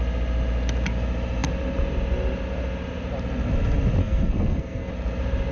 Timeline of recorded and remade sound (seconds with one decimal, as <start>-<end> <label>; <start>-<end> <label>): 0.0-4.0 recorded; 4.0-4.9 remade; 4.9-5.5 recorded